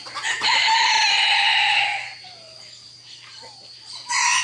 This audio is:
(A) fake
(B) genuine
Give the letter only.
B